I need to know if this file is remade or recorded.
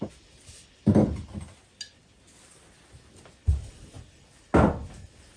recorded